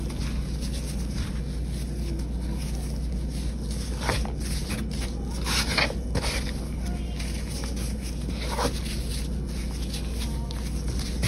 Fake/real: real